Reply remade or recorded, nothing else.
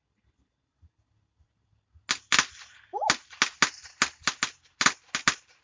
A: recorded